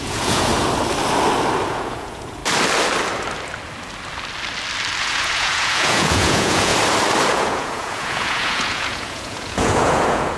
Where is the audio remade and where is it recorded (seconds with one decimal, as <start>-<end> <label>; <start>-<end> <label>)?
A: 0.0-0.5 remade; 0.5-1.7 recorded; 1.7-2.4 remade; 2.4-5.0 recorded; 5.0-6.7 remade; 6.7-7.3 recorded; 7.3-10.4 remade